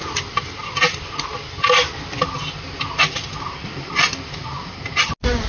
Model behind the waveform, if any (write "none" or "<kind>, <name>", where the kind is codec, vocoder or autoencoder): none